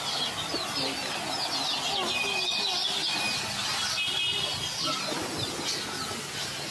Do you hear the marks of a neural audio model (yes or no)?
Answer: no